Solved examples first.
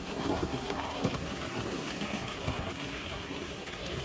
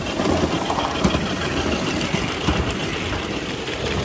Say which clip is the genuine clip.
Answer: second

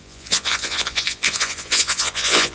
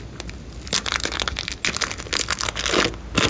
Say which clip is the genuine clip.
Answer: second